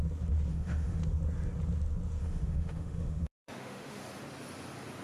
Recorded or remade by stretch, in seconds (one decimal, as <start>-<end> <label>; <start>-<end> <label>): 0.0-0.5 recorded; 0.5-1.0 remade; 1.0-2.2 recorded; 2.2-4.0 remade; 4.0-5.0 recorded

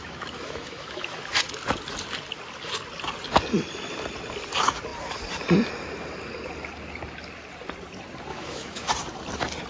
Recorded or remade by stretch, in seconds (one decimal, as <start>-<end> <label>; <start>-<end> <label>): 0.0-1.2 remade; 1.2-8.3 recorded; 8.3-8.9 remade; 8.9-9.7 recorded

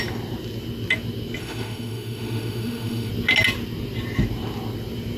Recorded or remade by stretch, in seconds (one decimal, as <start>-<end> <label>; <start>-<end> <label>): 0.0-1.4 recorded; 1.4-3.1 remade; 3.1-5.2 recorded